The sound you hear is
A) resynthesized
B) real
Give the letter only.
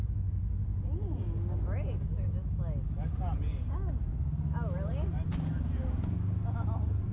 B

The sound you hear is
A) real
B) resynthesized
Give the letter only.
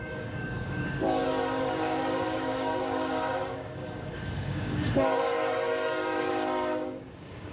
B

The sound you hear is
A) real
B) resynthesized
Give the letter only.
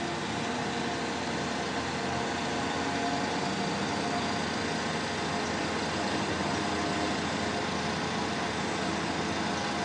A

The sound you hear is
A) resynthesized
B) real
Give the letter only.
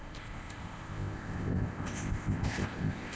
A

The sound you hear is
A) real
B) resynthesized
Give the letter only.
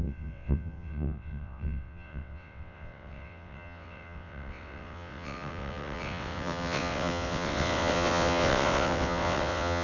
B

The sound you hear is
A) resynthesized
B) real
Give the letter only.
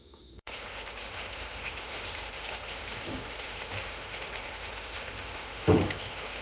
A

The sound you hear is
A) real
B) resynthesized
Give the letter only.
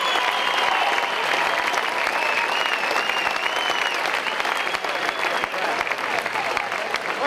A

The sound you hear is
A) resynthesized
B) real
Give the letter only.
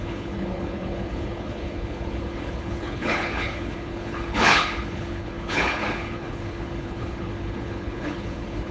A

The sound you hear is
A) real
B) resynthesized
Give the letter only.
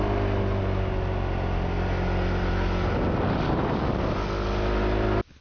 A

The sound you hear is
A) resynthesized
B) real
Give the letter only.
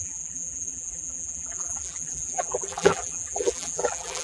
A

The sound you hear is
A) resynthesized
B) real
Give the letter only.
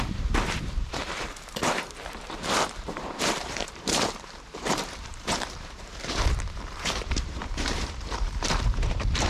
A